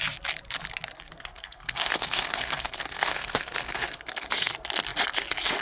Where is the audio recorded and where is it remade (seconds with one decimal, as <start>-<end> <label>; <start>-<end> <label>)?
0.0-1.1 recorded; 1.1-4.5 remade; 4.5-5.6 recorded